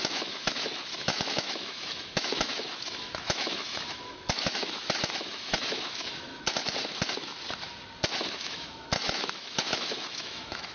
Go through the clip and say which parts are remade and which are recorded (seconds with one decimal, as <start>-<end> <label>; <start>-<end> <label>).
0.0-6.6 remade; 6.6-8.4 recorded; 8.4-10.7 remade